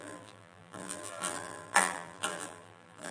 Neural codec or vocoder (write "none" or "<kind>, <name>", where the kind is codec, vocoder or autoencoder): vocoder, BigVGAN v2